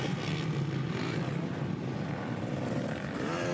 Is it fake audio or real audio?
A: real